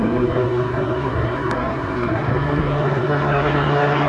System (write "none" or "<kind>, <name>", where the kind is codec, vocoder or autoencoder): codec, SNAC